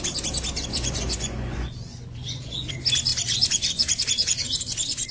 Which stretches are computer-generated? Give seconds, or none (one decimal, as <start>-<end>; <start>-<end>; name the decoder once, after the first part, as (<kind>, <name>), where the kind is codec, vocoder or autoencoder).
0.7-2.7 (vocoder, Vocos); 3.1-5.1